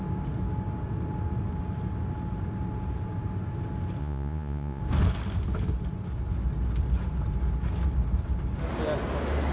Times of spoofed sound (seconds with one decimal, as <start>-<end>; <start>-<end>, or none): 4.0-4.8

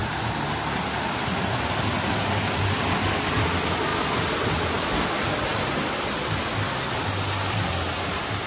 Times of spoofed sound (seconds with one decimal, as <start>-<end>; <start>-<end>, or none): none

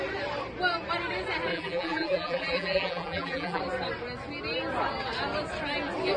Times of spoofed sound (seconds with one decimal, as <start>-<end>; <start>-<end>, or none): 1.5-3.6

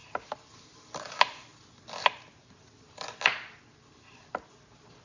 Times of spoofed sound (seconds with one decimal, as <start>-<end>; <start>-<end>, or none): none

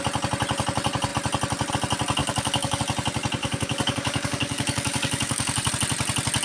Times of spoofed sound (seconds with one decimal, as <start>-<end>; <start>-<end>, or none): 2.2-2.8; 3.4-5.7

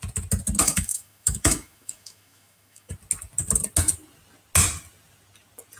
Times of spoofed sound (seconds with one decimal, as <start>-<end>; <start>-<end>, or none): 0.6-2.9